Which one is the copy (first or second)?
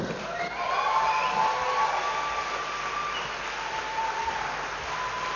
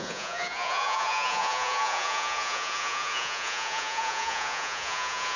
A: second